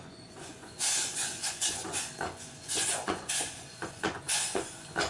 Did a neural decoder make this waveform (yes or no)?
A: yes